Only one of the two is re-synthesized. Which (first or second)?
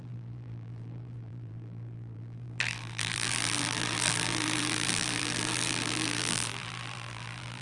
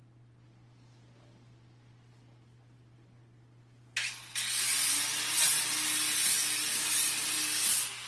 first